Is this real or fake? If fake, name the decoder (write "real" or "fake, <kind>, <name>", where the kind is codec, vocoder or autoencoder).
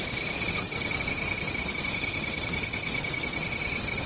real